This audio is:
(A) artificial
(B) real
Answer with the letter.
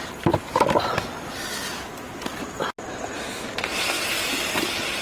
B